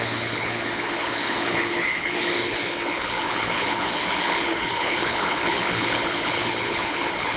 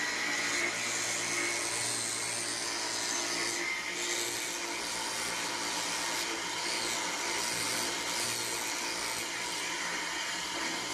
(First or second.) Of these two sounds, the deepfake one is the first